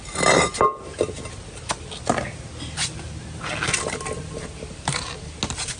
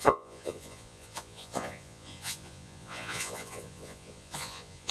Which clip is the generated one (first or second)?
second